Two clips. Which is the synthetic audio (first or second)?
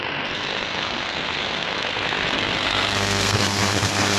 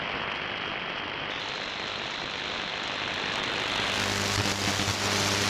first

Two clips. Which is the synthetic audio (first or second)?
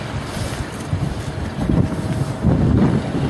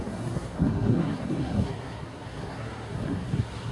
second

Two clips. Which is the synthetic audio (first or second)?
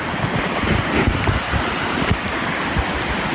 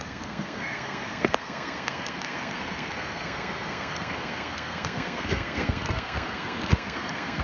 second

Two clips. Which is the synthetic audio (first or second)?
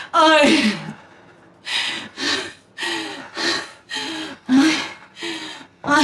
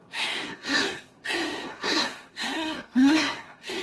second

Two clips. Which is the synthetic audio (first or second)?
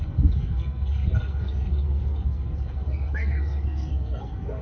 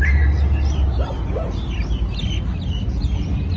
first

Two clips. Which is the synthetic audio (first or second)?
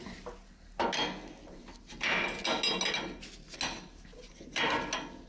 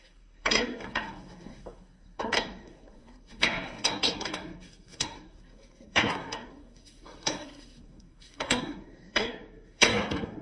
second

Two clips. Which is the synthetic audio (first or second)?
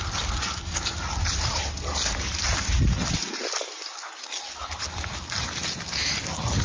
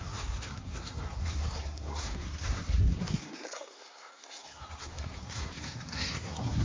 second